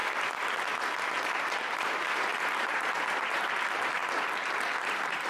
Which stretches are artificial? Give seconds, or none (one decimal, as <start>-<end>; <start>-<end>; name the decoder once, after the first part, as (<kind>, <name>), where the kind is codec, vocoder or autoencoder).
1.2-4.0 (vocoder, BigVGAN v2); 4.8-5.3